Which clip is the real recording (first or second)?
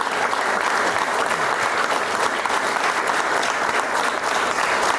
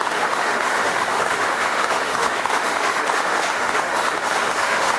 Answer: first